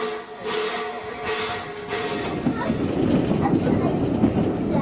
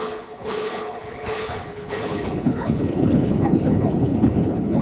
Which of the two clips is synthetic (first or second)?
second